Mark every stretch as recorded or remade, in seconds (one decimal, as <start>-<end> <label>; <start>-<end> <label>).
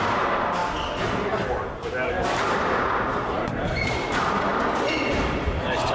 0.0-0.6 remade; 0.6-2.1 recorded; 2.1-4.5 remade; 4.5-5.1 recorded; 5.1-5.9 remade